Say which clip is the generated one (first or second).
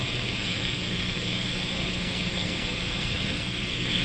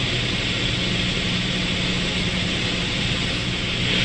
first